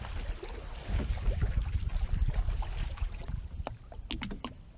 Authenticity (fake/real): real